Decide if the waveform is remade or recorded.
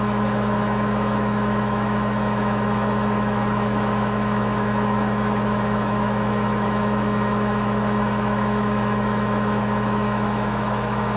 remade